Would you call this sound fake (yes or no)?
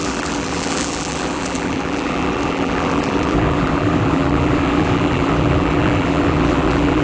yes